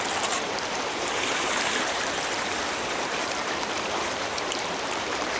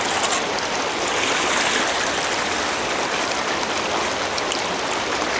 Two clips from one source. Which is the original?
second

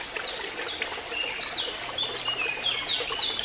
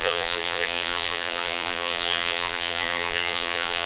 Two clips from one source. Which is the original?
first